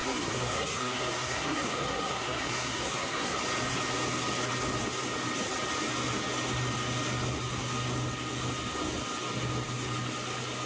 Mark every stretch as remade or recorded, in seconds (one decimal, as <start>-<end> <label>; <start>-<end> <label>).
0.0-3.4 remade; 3.4-10.7 recorded